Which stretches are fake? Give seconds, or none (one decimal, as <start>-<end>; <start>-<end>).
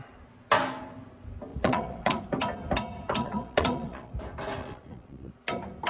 1.5-2.2; 3.2-4.1; 4.6-5.3